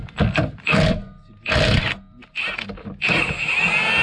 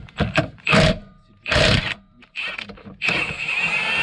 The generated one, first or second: second